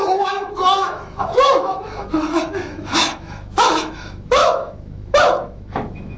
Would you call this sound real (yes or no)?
no